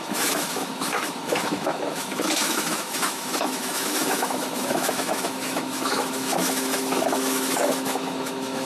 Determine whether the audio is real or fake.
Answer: fake